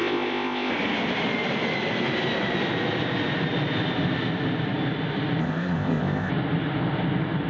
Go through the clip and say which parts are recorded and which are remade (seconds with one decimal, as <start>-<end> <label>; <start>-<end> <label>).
0.0-0.7 remade; 0.7-5.4 recorded; 5.4-6.3 remade; 6.3-7.5 recorded